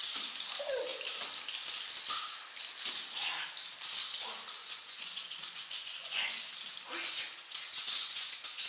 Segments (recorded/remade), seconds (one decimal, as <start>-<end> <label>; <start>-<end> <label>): 0.0-4.6 recorded; 4.6-6.5 remade; 6.5-7.0 recorded; 7.0-8.7 remade